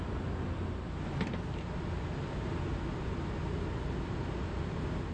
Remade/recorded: recorded